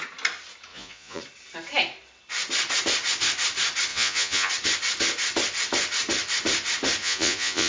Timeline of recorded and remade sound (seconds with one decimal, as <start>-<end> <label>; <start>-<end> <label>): 0.0-0.7 recorded; 0.7-1.2 remade; 1.2-3.9 recorded; 3.9-4.5 remade; 4.5-7.0 recorded; 7.0-7.7 remade